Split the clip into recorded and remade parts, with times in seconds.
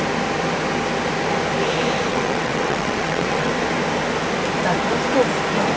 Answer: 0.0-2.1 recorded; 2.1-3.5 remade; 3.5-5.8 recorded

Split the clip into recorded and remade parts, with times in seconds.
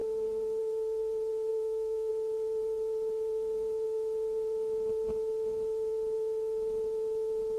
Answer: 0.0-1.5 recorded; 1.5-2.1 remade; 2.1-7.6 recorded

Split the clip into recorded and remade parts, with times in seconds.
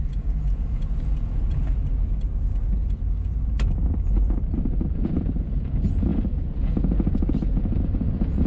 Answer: 0.0-1.8 remade; 1.8-4.9 recorded; 4.9-8.5 remade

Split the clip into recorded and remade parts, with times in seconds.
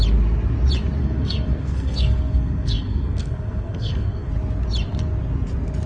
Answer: 0.0-1.0 recorded; 1.0-4.3 remade; 4.3-5.9 recorded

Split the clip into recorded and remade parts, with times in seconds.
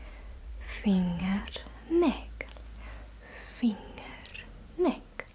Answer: 0.0-1.6 remade; 1.6-3.6 recorded; 3.6-4.3 remade; 4.3-5.3 recorded